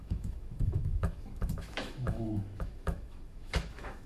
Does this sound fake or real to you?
fake